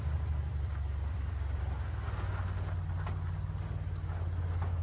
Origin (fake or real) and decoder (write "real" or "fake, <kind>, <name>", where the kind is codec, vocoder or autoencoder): real